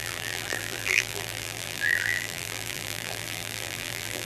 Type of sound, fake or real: fake